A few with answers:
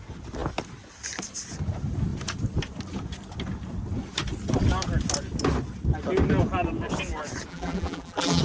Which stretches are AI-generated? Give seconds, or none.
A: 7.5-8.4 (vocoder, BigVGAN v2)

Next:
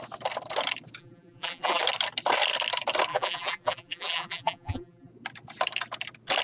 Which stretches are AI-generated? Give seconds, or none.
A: 1.0-1.8 (vocoder, BigVGAN v2); 3.1-5.1